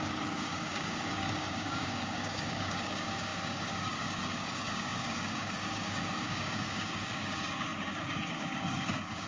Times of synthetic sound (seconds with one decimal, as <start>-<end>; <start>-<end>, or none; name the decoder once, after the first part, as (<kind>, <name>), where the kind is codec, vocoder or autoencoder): 0.0-9.3 (codec, DAC)